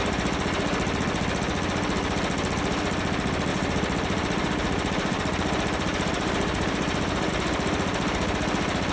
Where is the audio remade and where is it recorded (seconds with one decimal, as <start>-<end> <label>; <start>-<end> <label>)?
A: 0.0-3.5 recorded; 3.5-7.3 remade; 7.3-8.9 recorded